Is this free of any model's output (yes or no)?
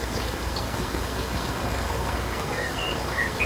no